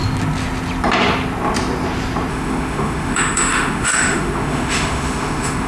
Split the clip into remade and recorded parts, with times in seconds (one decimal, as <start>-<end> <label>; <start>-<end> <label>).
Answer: 0.0-2.3 recorded; 2.3-5.7 remade